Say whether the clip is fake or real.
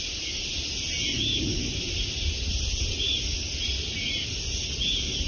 real